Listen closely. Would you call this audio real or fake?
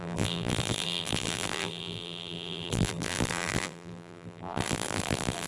fake